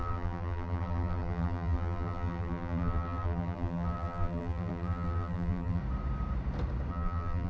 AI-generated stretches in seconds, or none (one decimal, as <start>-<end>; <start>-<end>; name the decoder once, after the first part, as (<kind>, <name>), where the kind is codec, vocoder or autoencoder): 0.0-5.8 (vocoder, BigVGAN v2); 6.9-7.5